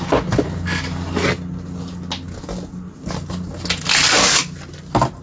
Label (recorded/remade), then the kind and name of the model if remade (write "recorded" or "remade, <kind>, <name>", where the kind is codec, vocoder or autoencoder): recorded